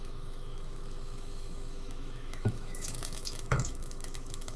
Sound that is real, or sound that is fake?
fake